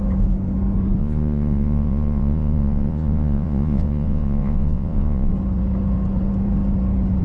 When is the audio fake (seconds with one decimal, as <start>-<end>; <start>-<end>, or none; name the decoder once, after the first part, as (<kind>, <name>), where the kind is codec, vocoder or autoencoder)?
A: 1.0-5.3 (vocoder, Vocos)